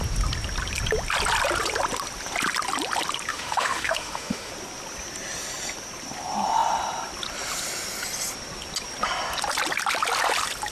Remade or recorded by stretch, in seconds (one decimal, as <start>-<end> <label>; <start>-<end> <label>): 0.0-3.3 recorded; 3.3-4.5 remade; 4.5-10.7 recorded

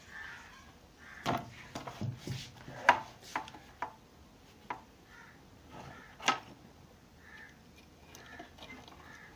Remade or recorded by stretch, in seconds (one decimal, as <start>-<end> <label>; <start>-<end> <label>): 0.0-9.4 recorded

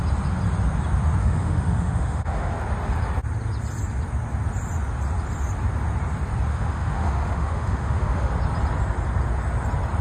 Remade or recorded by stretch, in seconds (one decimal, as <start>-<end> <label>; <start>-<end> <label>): 0.0-1.2 recorded; 1.2-2.5 remade; 2.5-6.5 recorded; 6.5-8.3 remade; 8.3-10.0 recorded

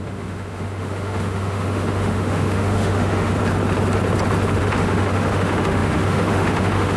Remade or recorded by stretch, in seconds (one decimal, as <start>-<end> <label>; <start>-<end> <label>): 0.0-3.4 remade; 3.4-4.6 recorded; 4.6-7.0 remade

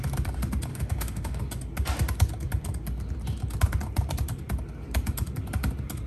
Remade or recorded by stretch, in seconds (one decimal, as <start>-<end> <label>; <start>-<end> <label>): 0.0-0.7 recorded; 0.7-1.4 remade; 1.4-6.1 recorded

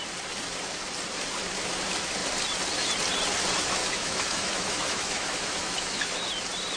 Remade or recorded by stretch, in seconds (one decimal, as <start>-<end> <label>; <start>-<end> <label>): 0.0-3.8 recorded; 3.8-6.2 remade; 6.2-6.8 recorded

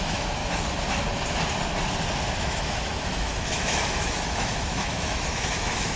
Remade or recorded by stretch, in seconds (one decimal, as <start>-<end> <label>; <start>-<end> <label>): 0.0-0.4 remade; 0.4-2.4 recorded; 2.4-6.0 remade

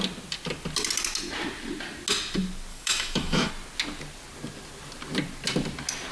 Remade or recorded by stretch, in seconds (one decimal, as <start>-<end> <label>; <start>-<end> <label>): 0.0-2.7 recorded; 2.7-3.5 remade; 3.5-6.1 recorded